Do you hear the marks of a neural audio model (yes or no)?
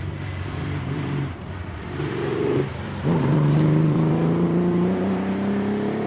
yes